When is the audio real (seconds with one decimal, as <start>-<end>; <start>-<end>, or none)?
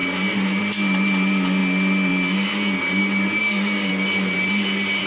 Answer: 0.0-3.4; 3.9-5.1